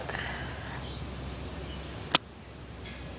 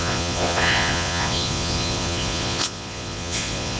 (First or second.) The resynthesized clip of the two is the second